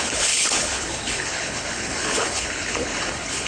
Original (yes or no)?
no